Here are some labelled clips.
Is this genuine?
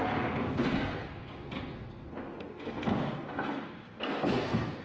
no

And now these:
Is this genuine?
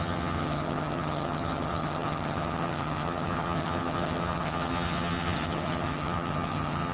no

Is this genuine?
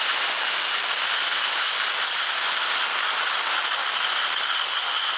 yes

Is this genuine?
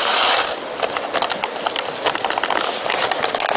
yes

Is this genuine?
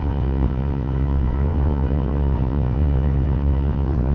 no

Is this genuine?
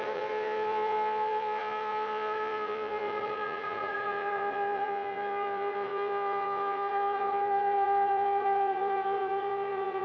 no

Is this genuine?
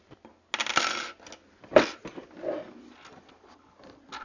yes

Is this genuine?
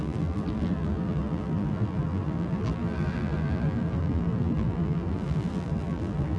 no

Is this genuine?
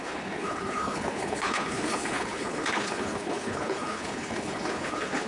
no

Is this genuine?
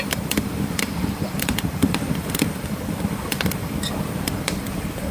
no